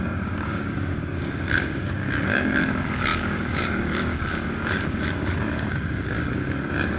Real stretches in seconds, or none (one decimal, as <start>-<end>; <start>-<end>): none